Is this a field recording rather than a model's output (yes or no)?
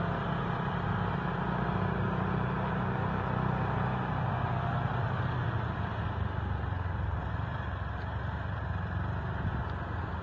yes